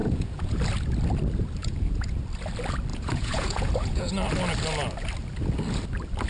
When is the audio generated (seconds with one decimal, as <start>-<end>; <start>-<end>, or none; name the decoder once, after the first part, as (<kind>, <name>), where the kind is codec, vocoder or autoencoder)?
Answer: 0.0-0.6 (vocoder, Vocos); 1.6-2.2; 2.9-4.1